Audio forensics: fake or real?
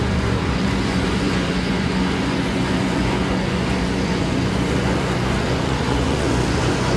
fake